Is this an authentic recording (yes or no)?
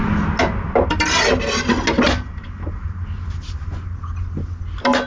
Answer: yes